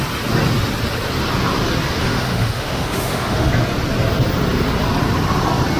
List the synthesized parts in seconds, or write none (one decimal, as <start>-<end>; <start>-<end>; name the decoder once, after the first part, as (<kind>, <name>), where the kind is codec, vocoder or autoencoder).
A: 2.0-3.5 (autoencoder, DAC-VAE)